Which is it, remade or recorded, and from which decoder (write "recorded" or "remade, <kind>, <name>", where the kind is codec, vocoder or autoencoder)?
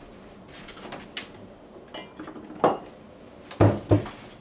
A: recorded